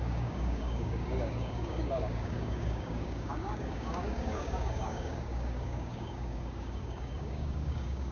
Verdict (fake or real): fake